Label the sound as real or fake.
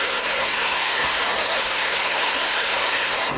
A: fake